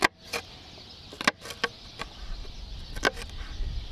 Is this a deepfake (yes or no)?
no